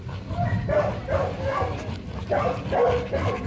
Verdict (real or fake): real